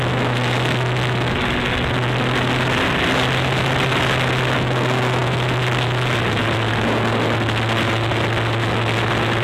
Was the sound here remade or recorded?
recorded